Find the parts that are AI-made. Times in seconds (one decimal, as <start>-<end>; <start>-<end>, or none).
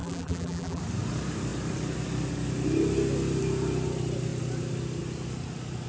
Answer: 0.0-0.8